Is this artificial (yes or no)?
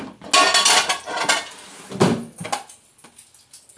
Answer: no